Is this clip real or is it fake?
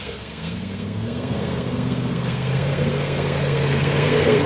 fake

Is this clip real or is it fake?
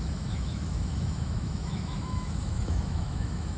fake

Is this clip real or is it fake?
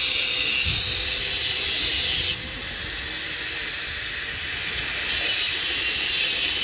real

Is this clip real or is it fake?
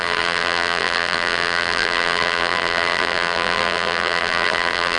fake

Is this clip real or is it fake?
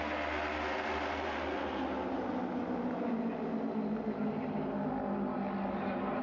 real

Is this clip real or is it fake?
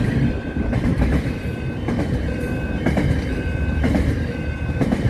fake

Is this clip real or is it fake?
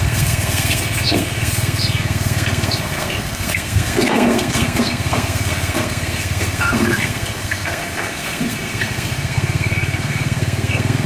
fake